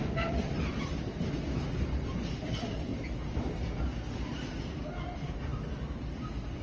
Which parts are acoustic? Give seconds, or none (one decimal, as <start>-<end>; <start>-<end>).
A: 2.9-4.6

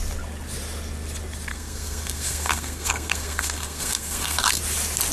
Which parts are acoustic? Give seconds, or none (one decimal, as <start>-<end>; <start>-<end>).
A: 0.0-1.5; 4.6-5.1

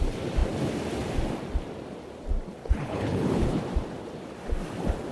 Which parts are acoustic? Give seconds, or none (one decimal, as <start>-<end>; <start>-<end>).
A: 0.0-2.6; 3.6-5.1

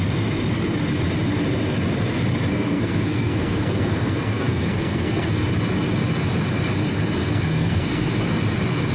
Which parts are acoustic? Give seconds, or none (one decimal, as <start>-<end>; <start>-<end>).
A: 0.0-2.5; 5.4-7.2; 8.1-8.9

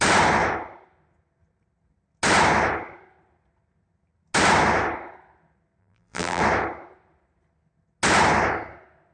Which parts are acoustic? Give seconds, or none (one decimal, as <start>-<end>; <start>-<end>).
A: 0.0-5.8; 6.4-9.1

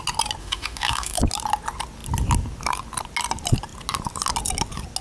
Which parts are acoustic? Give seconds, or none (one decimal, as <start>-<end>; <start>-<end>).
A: 0.0-0.4; 1.2-5.0

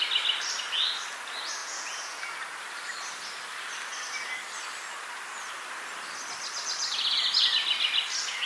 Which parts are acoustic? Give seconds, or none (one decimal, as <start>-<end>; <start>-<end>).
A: 0.0-1.6; 2.2-8.5

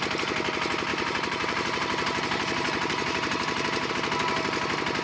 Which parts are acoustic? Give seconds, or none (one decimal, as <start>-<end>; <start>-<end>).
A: 0.0-0.9; 3.9-5.0